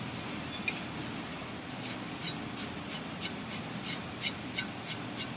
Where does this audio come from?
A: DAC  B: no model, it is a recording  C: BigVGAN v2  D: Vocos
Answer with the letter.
B